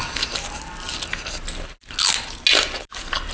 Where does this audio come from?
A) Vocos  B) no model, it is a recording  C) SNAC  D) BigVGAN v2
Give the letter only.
B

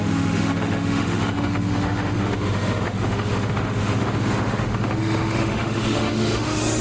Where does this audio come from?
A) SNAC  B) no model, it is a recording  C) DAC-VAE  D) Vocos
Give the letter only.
C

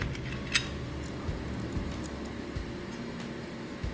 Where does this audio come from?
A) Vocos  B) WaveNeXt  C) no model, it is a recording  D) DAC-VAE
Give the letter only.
C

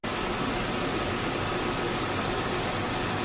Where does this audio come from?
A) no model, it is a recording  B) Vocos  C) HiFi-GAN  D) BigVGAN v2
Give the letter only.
A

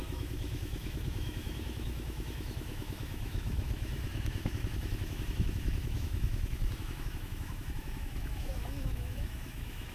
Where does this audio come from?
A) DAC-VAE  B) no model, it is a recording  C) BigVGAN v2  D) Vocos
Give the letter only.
A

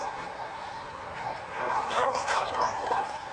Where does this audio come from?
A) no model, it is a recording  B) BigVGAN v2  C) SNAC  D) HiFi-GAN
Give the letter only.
C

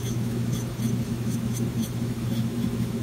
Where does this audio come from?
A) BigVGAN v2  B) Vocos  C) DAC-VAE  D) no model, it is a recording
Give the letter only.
C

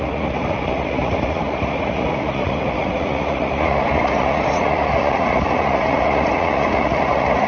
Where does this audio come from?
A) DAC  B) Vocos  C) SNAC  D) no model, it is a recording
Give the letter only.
B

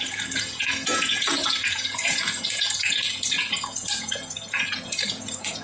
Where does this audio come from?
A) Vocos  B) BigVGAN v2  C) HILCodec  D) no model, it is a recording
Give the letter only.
A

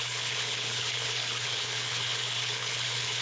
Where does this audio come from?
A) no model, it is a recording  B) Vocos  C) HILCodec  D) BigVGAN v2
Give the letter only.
C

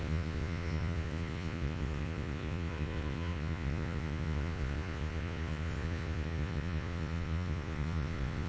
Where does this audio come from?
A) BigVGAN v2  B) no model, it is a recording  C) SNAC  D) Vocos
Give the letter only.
D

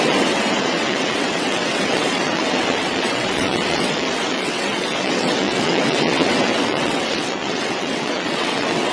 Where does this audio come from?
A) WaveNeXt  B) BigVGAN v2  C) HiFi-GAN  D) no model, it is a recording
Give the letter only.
A